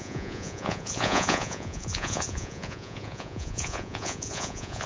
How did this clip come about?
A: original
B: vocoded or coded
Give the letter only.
B